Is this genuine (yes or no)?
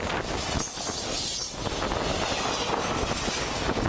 yes